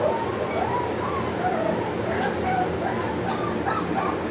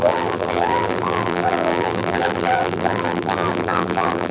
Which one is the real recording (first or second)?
first